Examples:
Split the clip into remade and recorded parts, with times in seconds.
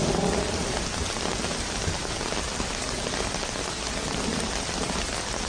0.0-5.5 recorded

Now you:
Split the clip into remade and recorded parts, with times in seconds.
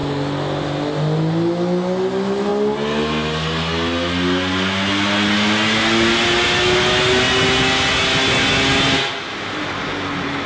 0.0-10.5 recorded